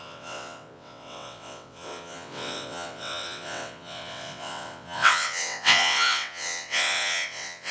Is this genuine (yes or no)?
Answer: no